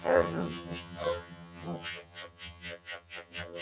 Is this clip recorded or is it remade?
remade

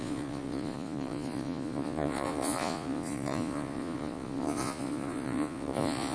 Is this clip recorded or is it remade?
remade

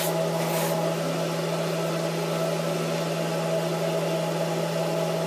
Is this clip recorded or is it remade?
recorded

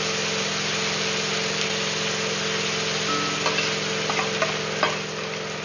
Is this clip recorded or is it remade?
recorded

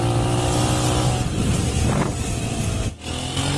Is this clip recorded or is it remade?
recorded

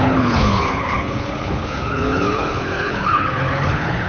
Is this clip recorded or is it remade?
remade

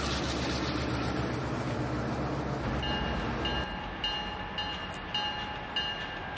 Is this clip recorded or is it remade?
recorded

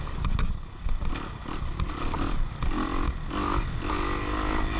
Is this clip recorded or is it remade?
recorded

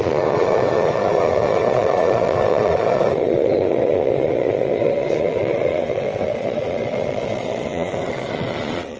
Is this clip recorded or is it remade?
remade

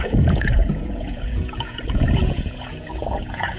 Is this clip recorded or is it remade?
remade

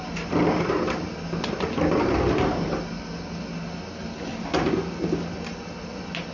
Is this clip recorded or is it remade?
recorded